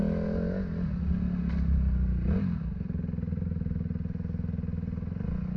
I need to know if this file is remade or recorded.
recorded